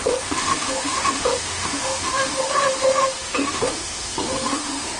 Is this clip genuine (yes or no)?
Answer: no